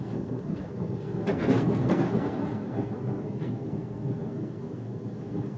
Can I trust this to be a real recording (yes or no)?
no